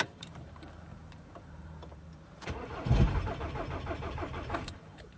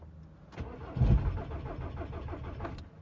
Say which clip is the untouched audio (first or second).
second